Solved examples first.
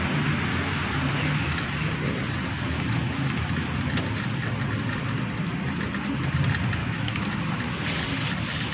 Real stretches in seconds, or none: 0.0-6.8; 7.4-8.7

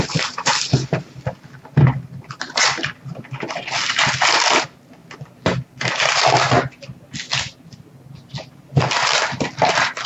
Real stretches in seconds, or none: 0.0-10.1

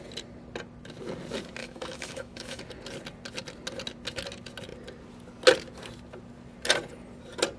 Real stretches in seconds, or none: 0.0-1.6; 2.6-7.6

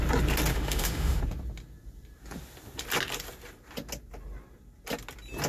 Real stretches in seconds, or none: 0.0-0.5; 1.2-5.5